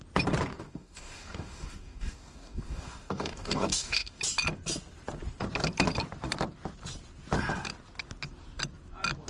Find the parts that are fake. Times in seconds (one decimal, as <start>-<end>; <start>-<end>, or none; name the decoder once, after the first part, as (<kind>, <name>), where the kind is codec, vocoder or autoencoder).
0.5-4.2 (codec, DAC)